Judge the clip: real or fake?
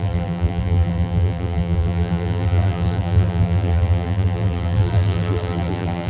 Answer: fake